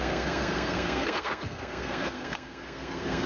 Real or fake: fake